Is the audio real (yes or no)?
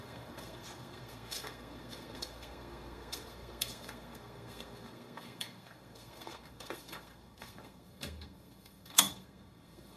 no